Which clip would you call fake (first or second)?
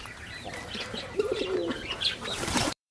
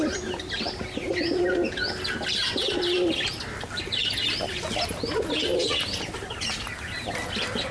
first